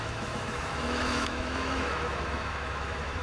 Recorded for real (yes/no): no